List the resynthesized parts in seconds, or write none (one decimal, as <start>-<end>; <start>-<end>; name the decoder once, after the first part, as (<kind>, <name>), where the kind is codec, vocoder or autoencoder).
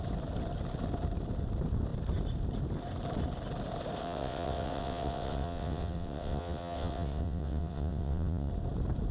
4.0-8.5 (vocoder, WaveNeXt)